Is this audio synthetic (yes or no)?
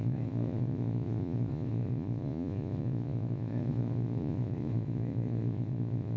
yes